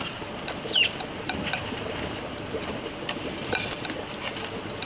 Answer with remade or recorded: recorded